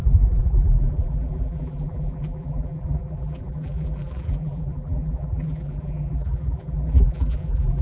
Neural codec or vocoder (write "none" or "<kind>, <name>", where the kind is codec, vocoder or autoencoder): vocoder, BigVGAN v2